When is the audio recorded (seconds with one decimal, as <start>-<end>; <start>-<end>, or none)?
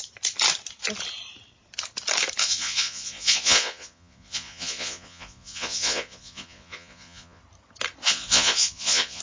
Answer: 0.0-2.4; 7.4-8.0